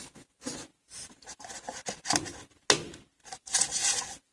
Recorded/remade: recorded